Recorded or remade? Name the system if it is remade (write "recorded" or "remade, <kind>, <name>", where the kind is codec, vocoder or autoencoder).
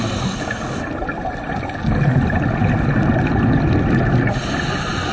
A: recorded